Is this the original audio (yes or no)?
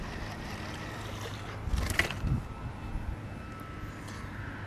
yes